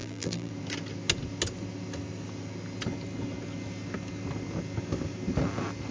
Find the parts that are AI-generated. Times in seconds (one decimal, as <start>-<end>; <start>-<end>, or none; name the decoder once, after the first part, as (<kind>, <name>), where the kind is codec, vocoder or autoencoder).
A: 0.0-0.5 (vocoder, BigVGAN v2)